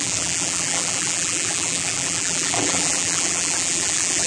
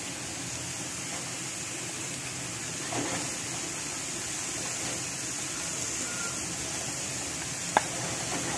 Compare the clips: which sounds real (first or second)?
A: second